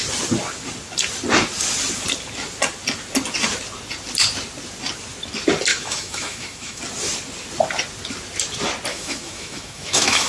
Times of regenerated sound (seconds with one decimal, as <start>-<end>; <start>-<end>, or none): 5.7-6.8; 8.9-10.3